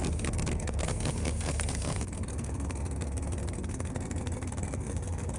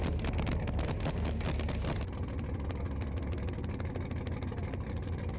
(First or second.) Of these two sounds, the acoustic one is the second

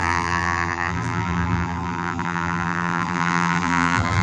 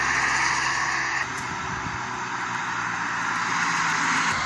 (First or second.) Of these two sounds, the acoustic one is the second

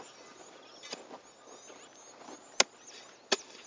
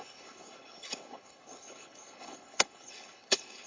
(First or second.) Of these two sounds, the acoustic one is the first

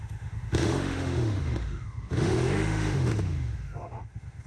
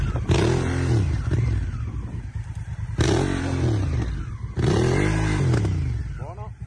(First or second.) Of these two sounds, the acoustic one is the second